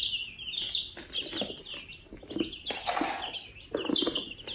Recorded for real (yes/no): yes